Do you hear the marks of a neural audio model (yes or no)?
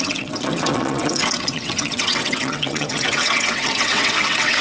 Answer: yes